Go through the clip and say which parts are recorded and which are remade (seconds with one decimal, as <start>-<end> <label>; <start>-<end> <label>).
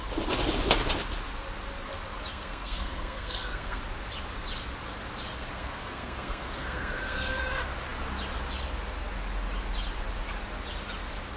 0.0-2.3 recorded; 2.3-3.8 remade; 3.8-5.4 recorded; 5.4-7.4 remade; 7.4-11.4 recorded